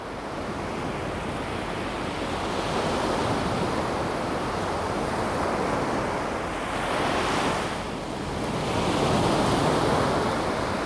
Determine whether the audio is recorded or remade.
recorded